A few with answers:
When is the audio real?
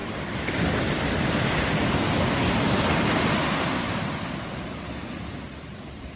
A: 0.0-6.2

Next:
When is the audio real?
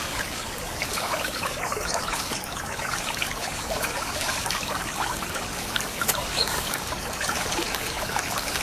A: none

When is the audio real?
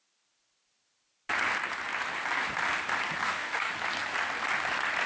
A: 0.0-3.2; 3.7-5.1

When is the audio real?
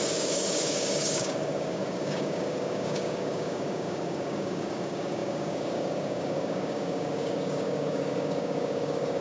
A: none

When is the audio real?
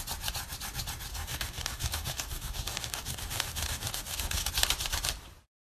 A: 0.0-1.1; 4.5-5.7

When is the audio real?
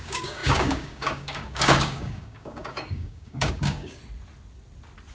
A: 4.0-5.1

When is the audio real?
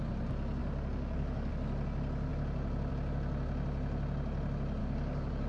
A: 0.0-0.6; 1.5-4.8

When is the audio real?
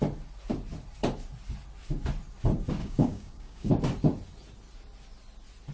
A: 0.0-2.8; 3.7-5.7